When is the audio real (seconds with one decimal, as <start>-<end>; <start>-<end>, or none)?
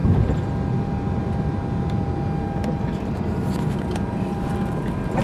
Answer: 0.0-5.2